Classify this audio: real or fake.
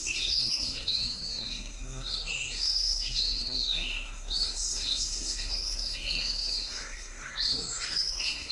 fake